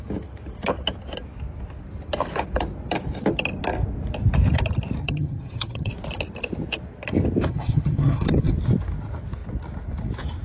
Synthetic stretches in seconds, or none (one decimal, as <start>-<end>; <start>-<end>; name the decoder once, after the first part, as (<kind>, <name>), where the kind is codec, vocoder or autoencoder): 5.0-5.9 (vocoder, HiFi-GAN); 7.5-8.5